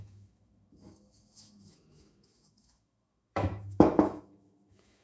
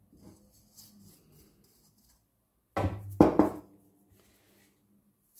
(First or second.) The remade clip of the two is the first